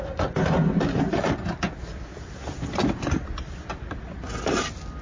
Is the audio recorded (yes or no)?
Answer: yes